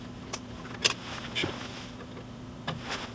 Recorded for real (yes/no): yes